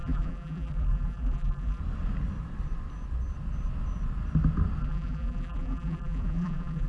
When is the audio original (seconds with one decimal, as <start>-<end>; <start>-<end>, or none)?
1.8-4.8